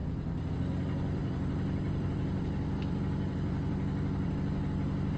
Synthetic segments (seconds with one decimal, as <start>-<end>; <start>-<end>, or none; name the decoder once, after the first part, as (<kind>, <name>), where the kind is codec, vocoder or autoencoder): 0.0-0.5 (vocoder, BigVGAN v2); 1.2-4.3